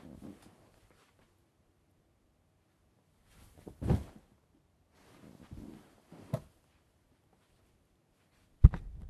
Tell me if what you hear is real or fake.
real